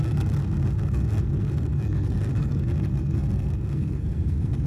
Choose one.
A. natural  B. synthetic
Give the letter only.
B